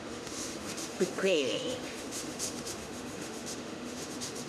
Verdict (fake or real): fake